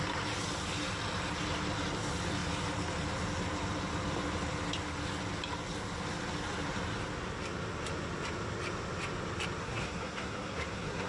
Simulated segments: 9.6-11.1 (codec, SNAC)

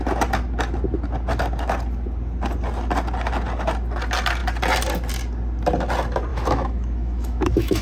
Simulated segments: 6.3-7.8 (autoencoder, DAC-VAE)

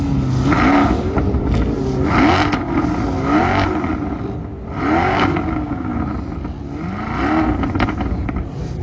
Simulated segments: 5.0-5.9 (codec, DAC)

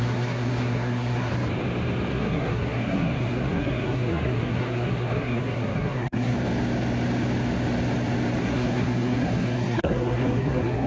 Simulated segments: 0.0-1.3 (codec, SNAC); 2.1-6.3; 8.4-10.9

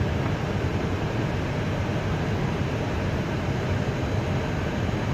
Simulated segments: none